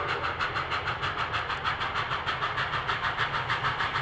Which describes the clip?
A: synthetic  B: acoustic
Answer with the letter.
B